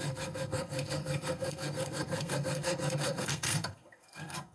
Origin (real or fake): fake